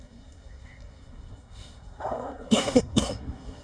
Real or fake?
fake